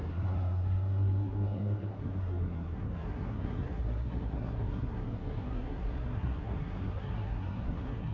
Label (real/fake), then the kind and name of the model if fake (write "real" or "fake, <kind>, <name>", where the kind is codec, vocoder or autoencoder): fake, codec, SNAC